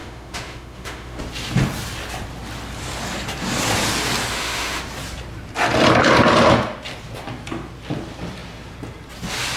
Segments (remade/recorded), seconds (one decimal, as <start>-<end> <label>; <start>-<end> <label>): 0.0-1.2 remade; 1.2-4.3 recorded; 4.3-4.8 remade; 4.8-9.6 recorded